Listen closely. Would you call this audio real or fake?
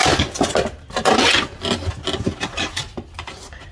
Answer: real